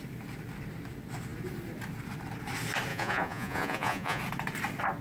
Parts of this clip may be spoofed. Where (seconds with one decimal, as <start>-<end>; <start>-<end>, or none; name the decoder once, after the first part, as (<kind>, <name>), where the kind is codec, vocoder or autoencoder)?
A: 2.9-4.2 (vocoder, Vocos)